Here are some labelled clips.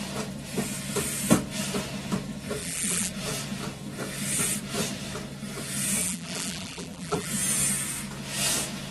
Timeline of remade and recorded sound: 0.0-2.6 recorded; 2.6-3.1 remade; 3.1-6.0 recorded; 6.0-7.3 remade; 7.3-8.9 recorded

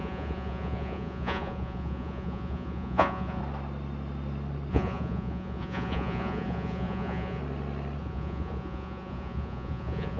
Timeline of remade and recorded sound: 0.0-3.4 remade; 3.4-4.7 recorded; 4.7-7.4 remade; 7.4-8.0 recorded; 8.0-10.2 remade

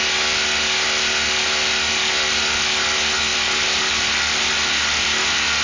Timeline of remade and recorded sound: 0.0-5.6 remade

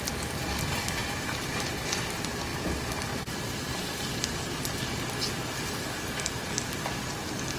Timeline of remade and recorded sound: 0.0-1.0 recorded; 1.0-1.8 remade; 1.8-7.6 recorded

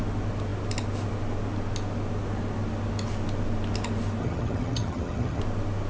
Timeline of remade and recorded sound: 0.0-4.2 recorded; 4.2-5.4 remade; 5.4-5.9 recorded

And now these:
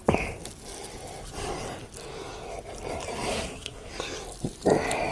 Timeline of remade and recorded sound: 0.0-3.3 recorded; 3.3-3.9 remade; 3.9-5.1 recorded

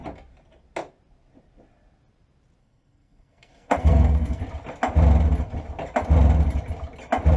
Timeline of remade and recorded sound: 0.0-2.6 recorded; 2.6-4.4 remade; 4.4-7.4 recorded

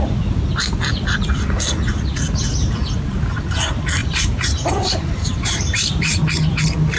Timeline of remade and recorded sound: 0.0-4.0 recorded; 4.0-6.2 remade; 6.2-7.0 recorded